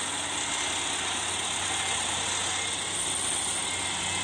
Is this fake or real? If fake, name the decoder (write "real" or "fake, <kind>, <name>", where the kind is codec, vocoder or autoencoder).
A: real